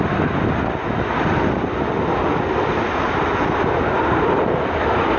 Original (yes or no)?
yes